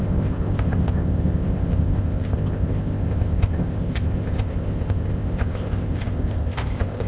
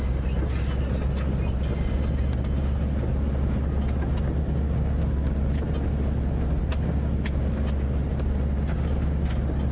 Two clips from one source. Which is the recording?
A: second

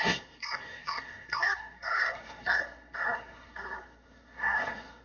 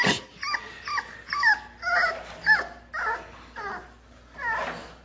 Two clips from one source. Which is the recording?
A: second